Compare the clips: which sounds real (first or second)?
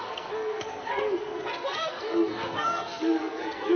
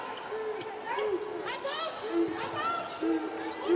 second